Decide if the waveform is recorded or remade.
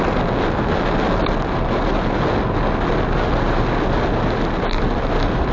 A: recorded